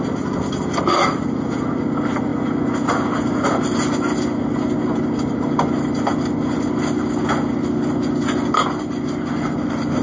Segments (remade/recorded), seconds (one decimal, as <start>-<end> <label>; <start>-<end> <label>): 0.0-10.0 recorded